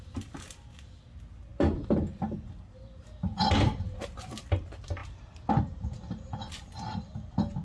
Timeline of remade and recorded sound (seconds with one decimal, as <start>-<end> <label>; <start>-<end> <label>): 0.0-7.6 recorded